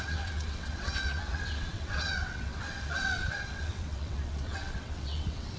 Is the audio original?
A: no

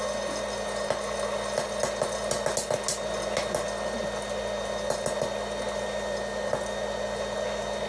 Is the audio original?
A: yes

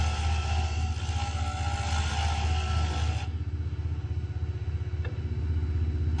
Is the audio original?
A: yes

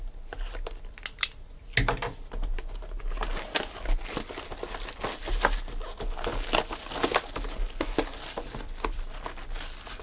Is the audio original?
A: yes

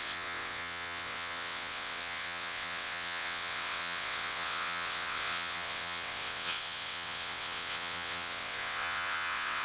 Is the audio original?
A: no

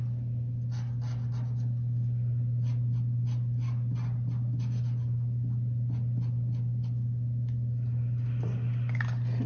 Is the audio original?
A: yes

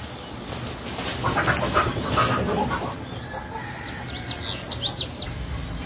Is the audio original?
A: yes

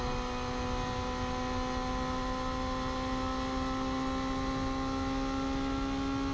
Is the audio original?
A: yes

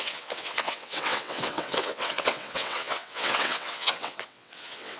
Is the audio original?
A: no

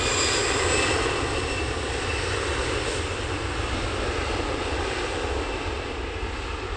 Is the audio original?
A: yes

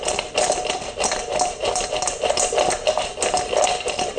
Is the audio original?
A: yes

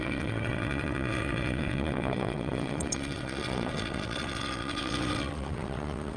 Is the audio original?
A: no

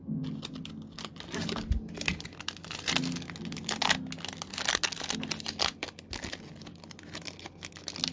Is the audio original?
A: yes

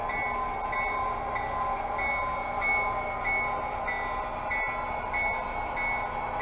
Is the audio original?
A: yes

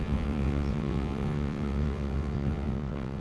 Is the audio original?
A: no